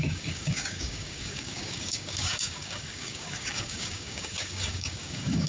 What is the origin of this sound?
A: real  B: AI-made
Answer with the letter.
B